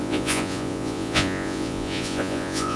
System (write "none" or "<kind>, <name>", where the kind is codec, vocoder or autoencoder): vocoder, Vocos